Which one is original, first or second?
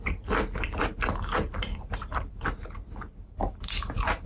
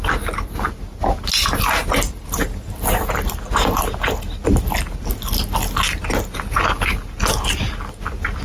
second